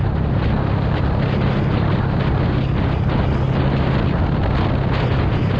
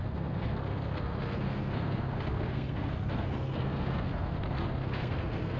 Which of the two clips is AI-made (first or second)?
second